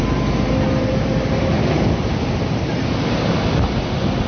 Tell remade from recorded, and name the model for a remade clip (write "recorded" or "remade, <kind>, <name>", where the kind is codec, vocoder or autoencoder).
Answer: recorded